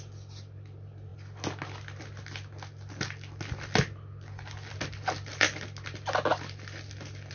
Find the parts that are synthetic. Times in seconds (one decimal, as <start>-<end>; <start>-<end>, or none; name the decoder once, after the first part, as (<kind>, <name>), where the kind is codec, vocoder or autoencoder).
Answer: none